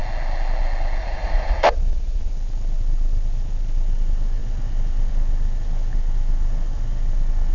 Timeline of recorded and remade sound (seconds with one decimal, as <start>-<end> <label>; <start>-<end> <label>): 0.0-1.0 recorded; 1.0-2.3 remade; 2.3-7.5 recorded